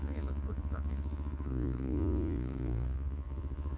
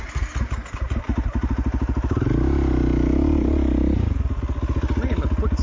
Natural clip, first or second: second